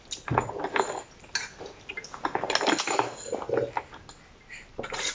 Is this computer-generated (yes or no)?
no